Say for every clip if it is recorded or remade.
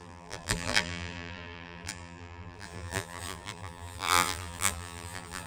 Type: remade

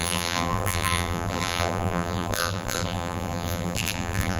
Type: remade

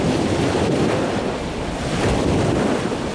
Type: recorded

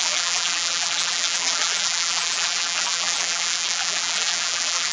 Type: remade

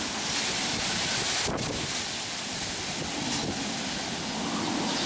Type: remade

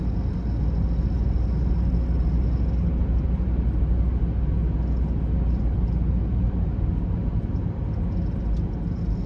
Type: recorded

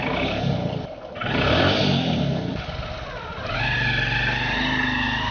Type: recorded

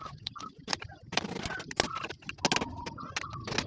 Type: recorded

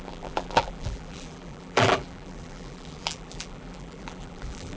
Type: remade